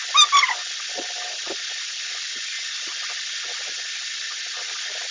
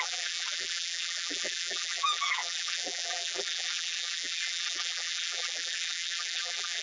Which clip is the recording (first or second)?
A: first